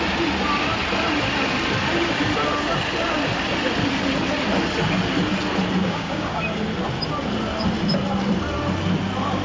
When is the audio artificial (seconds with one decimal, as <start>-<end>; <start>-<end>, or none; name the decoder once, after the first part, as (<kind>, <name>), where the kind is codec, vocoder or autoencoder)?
5.8-6.4 (codec, DAC)